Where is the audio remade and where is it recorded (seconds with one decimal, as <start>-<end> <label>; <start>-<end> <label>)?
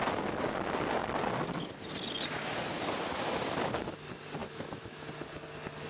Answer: 0.0-4.4 recorded; 4.4-5.1 remade; 5.1-5.9 recorded